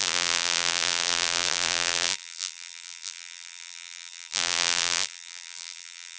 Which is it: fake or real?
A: fake